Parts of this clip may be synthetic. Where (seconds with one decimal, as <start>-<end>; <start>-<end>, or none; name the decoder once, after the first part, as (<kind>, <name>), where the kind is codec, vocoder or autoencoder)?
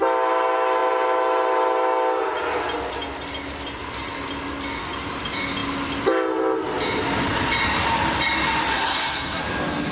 8.7-9.4 (codec, SNAC)